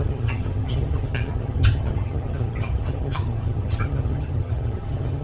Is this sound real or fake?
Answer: fake